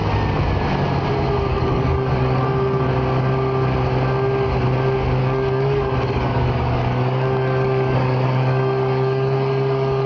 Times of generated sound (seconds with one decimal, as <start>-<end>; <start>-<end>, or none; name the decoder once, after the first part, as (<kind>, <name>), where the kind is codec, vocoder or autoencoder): 1.5-2.9 (codec, DAC); 5.2-10.1